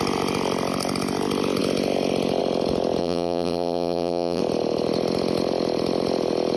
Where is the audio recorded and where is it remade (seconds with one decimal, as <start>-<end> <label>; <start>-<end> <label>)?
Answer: 0.0-3.0 recorded; 3.0-4.4 remade; 4.4-6.6 recorded